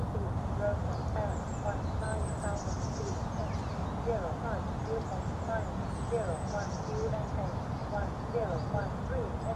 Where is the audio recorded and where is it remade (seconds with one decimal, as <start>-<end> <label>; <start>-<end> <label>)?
0.0-7.8 recorded; 7.8-8.6 remade; 8.6-9.6 recorded